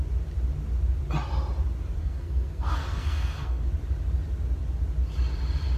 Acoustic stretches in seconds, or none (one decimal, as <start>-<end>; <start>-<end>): 0.0-2.0; 3.7-5.8